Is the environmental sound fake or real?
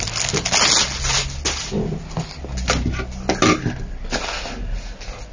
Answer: real